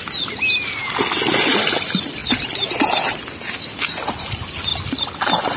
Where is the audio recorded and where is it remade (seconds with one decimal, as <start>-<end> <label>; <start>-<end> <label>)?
0.0-5.6 recorded